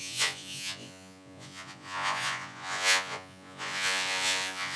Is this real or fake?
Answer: fake